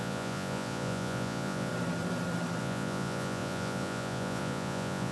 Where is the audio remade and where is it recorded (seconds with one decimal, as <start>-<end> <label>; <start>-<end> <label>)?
0.0-1.7 remade; 1.7-2.6 recorded; 2.6-5.1 remade